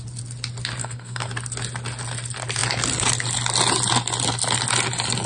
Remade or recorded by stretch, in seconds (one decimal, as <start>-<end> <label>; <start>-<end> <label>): 0.0-0.8 recorded; 0.8-1.3 remade; 1.3-5.3 recorded